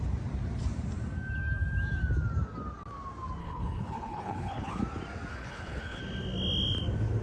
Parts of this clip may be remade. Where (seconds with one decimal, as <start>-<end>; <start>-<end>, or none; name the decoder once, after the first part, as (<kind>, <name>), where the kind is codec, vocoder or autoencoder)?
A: 3.4-4.8 (codec, HILCodec); 5.3-6.0